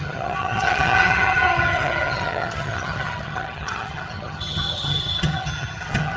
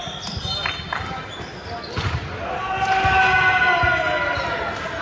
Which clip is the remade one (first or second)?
first